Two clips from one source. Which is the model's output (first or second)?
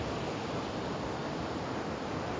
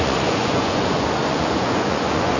second